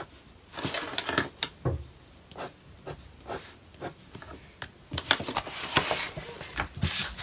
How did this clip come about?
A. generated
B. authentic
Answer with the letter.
B